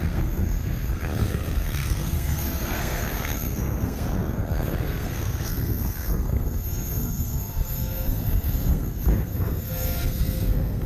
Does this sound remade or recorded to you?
remade